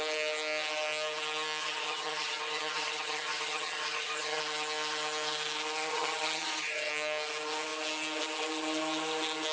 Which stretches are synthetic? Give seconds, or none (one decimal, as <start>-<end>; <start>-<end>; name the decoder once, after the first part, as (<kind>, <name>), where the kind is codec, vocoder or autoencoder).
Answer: 1.6-4.4 (vocoder, HiFi-GAN); 5.9-6.9